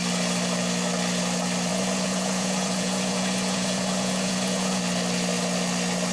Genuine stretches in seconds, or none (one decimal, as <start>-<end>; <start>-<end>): 0.0-1.7; 4.8-6.1